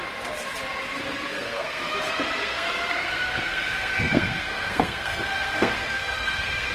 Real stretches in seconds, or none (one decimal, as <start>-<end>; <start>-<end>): 0.0-1.3; 1.8-2.4